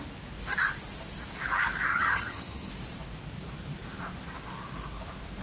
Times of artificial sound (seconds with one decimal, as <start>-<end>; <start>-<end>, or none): 1.9-2.7